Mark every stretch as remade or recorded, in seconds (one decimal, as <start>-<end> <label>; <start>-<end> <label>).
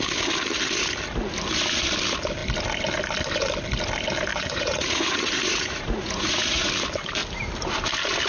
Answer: 0.0-4.3 recorded; 4.3-6.7 remade; 6.7-8.3 recorded